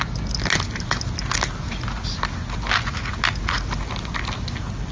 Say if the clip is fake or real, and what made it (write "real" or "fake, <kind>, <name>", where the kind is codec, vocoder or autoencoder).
real